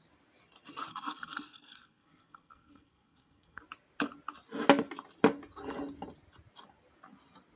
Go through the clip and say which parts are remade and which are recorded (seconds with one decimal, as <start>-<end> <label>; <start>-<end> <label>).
0.0-0.9 recorded; 0.9-3.6 remade; 3.6-7.6 recorded